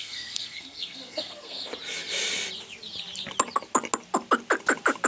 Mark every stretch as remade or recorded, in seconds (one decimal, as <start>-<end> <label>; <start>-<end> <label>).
0.0-1.7 remade; 1.7-5.1 recorded